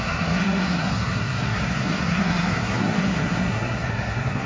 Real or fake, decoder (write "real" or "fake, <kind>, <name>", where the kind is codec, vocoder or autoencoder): fake, codec, SNAC